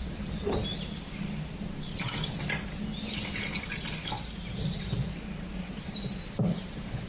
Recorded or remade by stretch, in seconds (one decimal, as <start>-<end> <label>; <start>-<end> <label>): 0.0-0.6 remade; 0.6-4.3 recorded; 4.3-7.1 remade